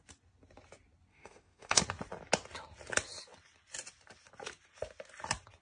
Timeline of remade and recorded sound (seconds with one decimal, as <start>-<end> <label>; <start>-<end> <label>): 0.0-1.1 recorded; 1.1-1.8 remade; 1.8-5.6 recorded